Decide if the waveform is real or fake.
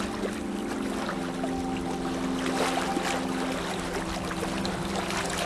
real